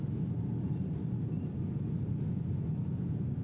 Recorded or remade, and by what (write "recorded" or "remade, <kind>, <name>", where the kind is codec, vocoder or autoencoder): recorded